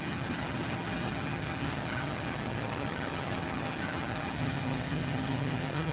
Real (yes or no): no